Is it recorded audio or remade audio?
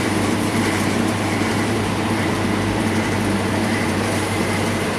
remade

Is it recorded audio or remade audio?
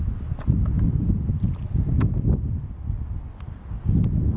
recorded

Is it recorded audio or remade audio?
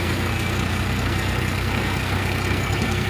remade